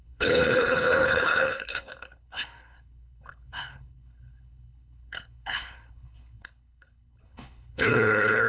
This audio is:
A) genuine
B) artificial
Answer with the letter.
B